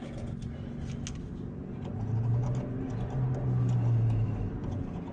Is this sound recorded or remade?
recorded